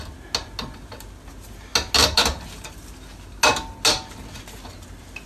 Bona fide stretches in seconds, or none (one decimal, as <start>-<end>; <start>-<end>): 0.0-5.3